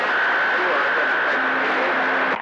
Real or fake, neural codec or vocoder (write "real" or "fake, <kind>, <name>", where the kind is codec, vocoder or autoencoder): real